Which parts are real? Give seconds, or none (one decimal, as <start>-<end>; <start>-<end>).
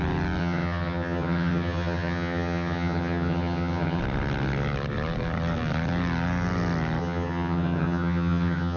0.0-0.4; 4.0-7.0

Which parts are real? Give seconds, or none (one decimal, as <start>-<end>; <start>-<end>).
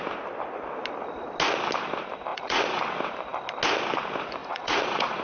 0.0-2.3; 2.8-4.4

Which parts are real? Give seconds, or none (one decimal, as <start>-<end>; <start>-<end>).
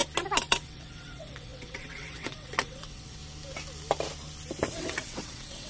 0.0-0.5; 3.2-4.7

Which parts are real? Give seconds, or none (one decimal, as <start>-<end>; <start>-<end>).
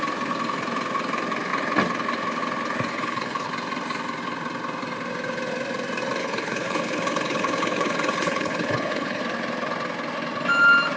0.0-2.9; 3.5-6.2; 9.2-11.0